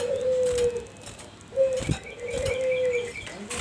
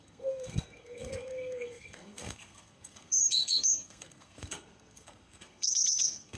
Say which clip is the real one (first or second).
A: first